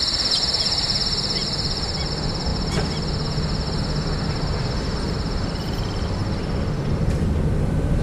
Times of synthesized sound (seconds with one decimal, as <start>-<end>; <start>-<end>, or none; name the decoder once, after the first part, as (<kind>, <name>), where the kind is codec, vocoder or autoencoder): 0.0-2.5 (vocoder, BigVGAN v2); 4.8-6.2; 6.9-8.0